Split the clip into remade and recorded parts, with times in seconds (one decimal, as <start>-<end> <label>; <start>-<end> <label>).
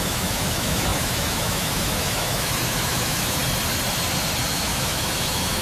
0.0-3.4 remade; 3.4-4.5 recorded; 4.5-5.6 remade